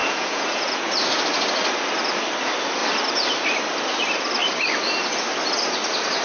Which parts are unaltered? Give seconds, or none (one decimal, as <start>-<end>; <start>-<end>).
0.9-6.2